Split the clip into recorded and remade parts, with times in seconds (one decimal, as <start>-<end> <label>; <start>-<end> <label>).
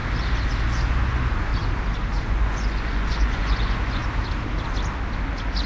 0.0-1.1 recorded; 1.1-1.5 remade; 1.5-2.1 recorded; 2.1-4.0 remade; 4.0-5.7 recorded